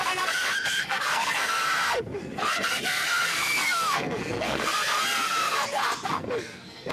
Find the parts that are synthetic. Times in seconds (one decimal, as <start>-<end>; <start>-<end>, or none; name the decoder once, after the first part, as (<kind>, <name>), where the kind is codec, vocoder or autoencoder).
0.0-6.9 (codec, SNAC)